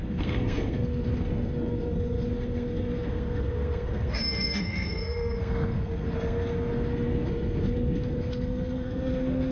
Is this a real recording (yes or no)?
no